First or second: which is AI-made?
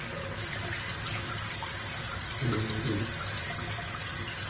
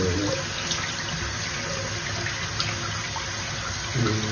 first